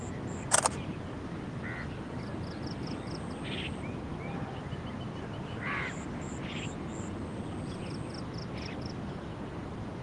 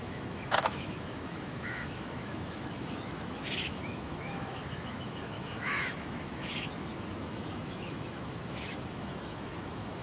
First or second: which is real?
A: first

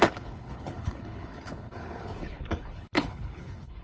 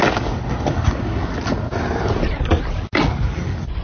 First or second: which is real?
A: second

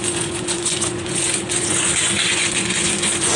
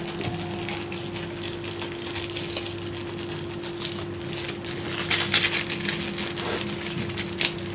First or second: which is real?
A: second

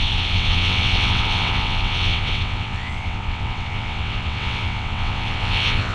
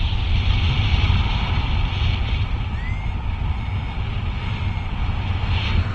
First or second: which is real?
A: second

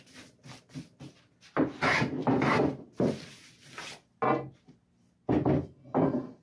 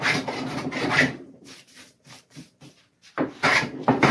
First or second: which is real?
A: first